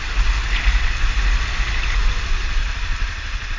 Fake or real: real